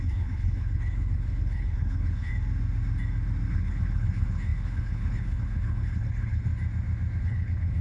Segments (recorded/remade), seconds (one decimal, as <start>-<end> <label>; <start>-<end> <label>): 0.0-2.3 remade; 2.3-3.5 recorded; 3.5-6.5 remade; 6.5-7.2 recorded; 7.2-7.8 remade